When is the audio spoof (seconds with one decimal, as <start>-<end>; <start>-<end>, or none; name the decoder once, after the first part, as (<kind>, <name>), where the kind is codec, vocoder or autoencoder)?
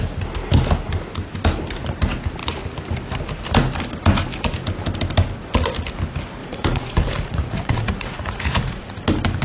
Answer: 6.4-8.9 (vocoder, Vocos)